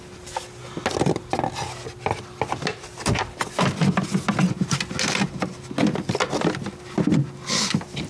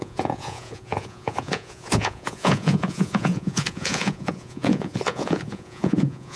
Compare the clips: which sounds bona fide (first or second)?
first